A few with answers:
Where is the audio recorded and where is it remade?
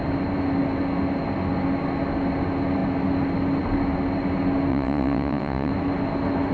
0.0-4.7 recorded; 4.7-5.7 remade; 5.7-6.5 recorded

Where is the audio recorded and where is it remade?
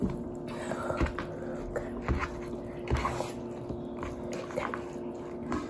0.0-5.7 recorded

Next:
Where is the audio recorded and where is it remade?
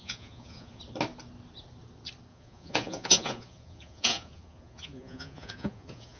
0.0-0.8 remade; 0.8-2.3 recorded; 2.3-6.2 remade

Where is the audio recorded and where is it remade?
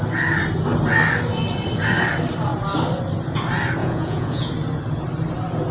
0.0-3.8 recorded; 3.8-4.5 remade; 4.5-5.7 recorded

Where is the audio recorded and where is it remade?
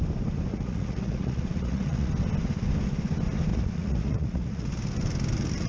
0.0-0.5 recorded; 0.5-2.1 remade; 2.1-3.5 recorded; 3.5-4.7 remade; 4.7-5.7 recorded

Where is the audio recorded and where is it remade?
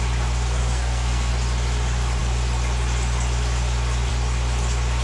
0.0-0.6 recorded; 0.6-1.3 remade; 1.3-5.0 recorded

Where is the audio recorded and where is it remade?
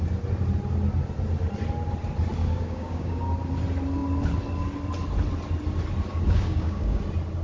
0.0-2.4 recorded; 2.4-3.2 remade; 3.2-6.1 recorded; 6.1-7.0 remade; 7.0-7.4 recorded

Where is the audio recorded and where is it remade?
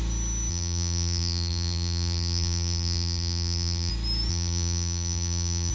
0.0-0.5 recorded; 0.5-3.9 remade; 3.9-4.3 recorded; 4.3-5.7 remade